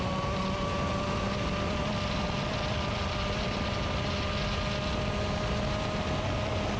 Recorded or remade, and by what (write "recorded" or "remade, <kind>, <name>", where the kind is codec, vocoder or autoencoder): recorded